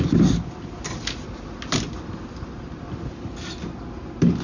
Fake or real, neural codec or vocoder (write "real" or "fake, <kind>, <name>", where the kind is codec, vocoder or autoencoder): real